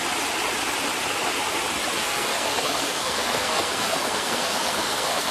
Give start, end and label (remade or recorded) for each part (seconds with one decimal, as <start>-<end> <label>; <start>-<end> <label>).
0.0-1.9 recorded; 1.9-5.3 remade